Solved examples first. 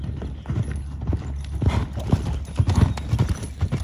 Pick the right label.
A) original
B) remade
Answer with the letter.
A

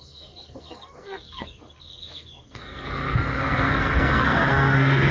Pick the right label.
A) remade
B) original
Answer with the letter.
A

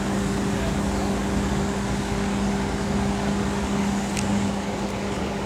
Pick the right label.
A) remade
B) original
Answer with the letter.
A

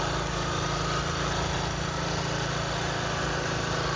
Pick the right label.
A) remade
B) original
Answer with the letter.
B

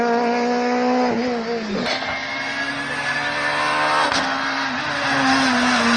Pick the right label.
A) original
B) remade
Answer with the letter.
A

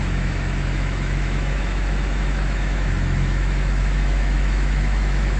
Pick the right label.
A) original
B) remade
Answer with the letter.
B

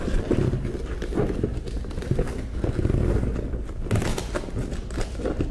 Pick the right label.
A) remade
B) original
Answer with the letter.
B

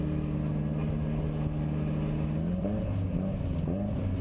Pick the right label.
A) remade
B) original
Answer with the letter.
B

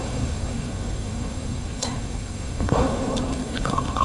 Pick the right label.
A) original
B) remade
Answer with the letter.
B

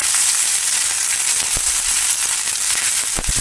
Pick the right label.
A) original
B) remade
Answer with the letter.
A